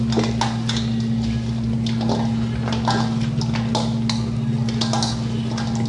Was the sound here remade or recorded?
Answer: recorded